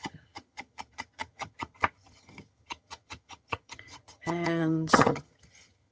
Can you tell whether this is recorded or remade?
remade